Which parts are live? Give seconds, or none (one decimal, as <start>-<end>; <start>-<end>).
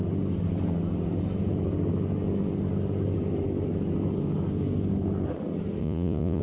0.0-5.8